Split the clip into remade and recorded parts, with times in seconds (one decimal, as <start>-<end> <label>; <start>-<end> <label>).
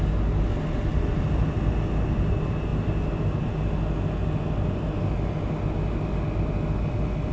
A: 0.0-7.3 recorded